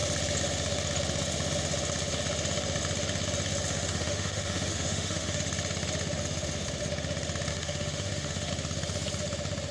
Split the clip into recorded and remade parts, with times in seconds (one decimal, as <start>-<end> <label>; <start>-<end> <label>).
0.0-3.7 recorded; 3.7-5.4 remade; 5.4-7.5 recorded; 7.5-8.5 remade; 8.5-9.7 recorded